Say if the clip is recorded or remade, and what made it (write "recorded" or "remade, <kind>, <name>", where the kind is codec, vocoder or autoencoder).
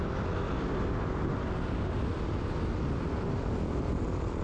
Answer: recorded